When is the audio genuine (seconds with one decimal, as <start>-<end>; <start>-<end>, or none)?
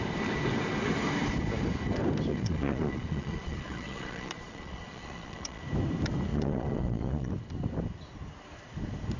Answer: 0.0-2.3; 5.6-6.3; 7.3-9.2